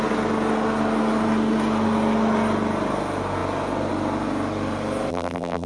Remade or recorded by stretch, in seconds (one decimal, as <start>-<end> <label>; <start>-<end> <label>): 0.0-5.1 recorded; 5.1-5.7 remade